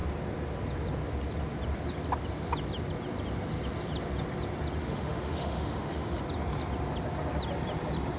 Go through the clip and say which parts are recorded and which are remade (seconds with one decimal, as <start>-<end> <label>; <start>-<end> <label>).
0.0-4.8 recorded; 4.8-6.2 remade; 6.2-8.2 recorded

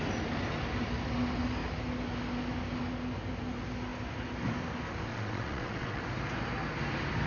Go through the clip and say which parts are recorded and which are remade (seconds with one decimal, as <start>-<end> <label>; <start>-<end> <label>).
0.0-5.1 recorded; 5.1-6.0 remade; 6.0-7.3 recorded

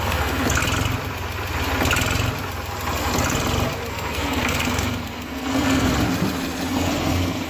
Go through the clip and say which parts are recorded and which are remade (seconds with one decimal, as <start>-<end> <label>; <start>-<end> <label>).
0.0-0.6 remade; 0.6-3.9 recorded; 3.9-5.9 remade; 5.9-6.7 recorded; 6.7-7.5 remade